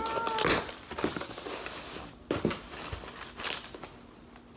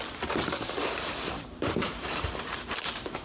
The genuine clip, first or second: first